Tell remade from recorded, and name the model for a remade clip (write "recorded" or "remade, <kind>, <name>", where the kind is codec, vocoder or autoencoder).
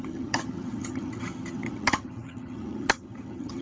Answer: remade, vocoder, HiFi-GAN